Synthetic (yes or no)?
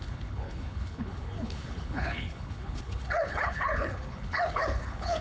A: yes